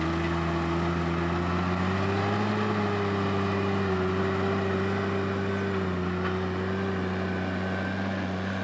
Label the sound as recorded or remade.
recorded